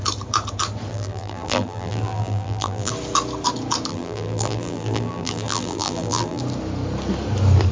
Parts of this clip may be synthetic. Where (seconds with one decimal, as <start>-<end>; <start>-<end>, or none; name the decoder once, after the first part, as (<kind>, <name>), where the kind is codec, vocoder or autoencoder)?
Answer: 0.9-2.9 (vocoder, BigVGAN v2); 3.9-6.4